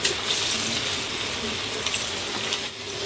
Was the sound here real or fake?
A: real